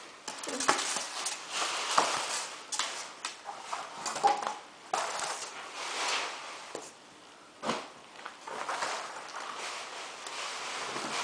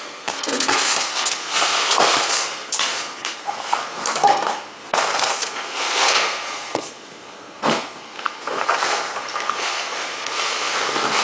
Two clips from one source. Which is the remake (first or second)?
second